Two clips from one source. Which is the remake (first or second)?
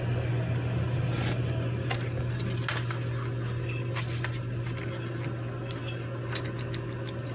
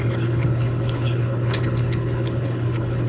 second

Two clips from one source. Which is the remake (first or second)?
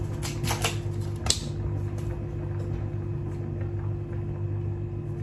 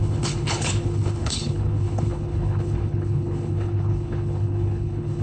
second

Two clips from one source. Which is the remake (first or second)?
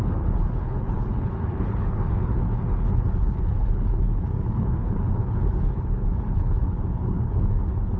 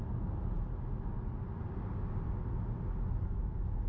first